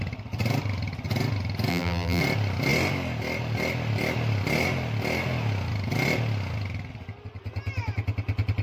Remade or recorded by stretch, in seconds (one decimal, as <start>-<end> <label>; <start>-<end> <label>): 0.0-1.7 recorded; 1.7-2.2 remade; 2.2-8.6 recorded